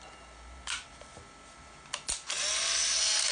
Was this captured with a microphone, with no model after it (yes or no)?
yes